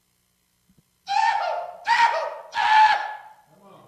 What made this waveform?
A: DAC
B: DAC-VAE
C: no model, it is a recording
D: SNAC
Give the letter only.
C